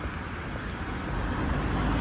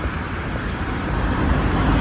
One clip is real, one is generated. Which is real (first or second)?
first